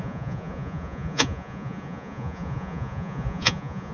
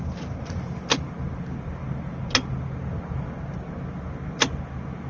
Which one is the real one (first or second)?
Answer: second